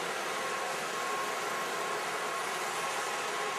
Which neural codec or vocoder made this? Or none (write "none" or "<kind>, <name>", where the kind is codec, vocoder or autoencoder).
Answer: none